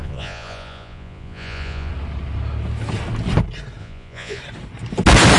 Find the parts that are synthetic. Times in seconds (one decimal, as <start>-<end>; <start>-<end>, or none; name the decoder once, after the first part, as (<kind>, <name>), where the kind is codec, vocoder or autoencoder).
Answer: 0.0-1.9 (vocoder, Vocos); 3.8-4.4